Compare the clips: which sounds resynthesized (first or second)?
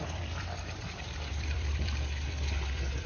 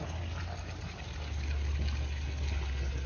first